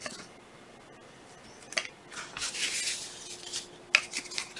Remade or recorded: recorded